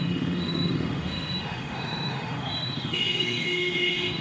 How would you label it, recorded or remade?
remade